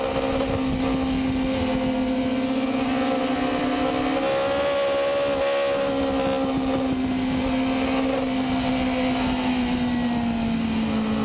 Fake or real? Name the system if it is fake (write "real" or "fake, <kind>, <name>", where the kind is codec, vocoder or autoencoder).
real